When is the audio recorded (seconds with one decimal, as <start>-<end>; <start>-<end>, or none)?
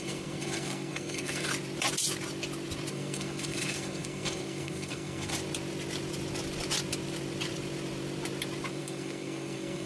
1.5-2.9; 5.3-8.7